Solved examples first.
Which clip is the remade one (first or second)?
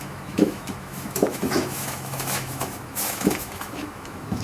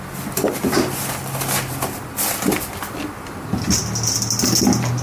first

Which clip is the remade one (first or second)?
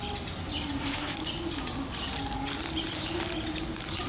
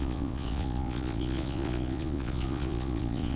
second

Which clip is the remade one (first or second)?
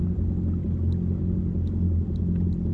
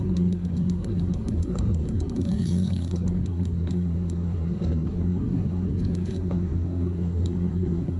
second